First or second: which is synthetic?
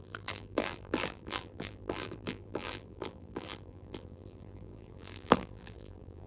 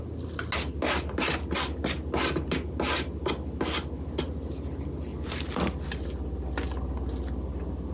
first